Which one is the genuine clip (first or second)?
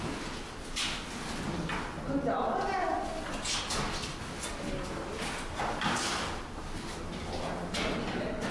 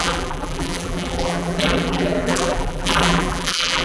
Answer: first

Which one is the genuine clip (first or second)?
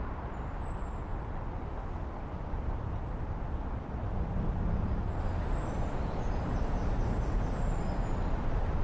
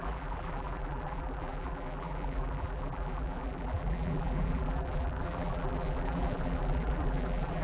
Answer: first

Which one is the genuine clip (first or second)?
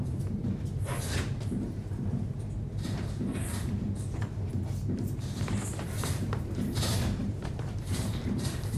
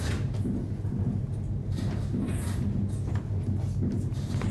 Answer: second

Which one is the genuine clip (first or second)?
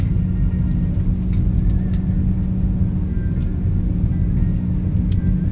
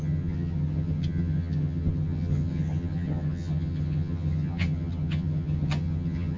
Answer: first